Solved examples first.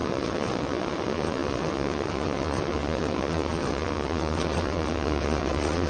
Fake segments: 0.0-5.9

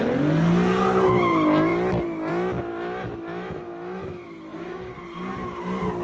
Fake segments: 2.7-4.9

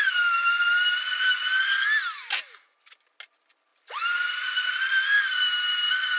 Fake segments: none